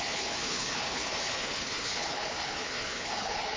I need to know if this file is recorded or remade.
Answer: remade